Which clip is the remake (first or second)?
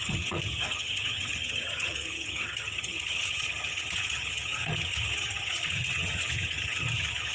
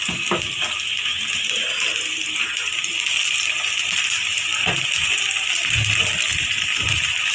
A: first